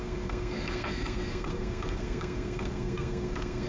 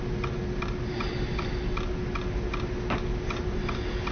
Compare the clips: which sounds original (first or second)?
second